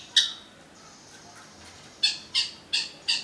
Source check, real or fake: real